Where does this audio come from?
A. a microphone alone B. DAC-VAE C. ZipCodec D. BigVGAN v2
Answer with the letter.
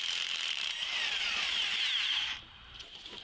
D